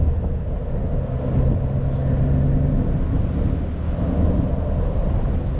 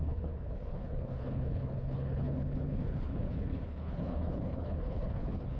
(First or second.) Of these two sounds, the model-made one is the second